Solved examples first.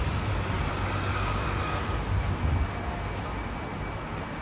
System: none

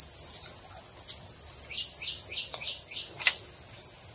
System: none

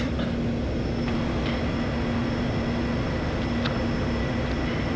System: none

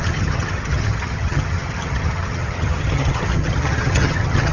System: vocoder, HiFi-GAN